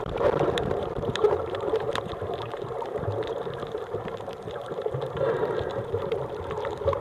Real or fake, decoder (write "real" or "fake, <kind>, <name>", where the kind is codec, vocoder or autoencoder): fake, vocoder, BigVGAN v2